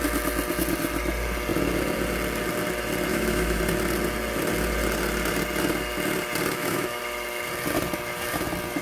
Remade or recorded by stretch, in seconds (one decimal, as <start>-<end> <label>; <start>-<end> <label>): 0.0-3.1 recorded; 3.1-3.6 remade; 3.6-6.5 recorded; 6.5-7.0 remade; 7.0-8.8 recorded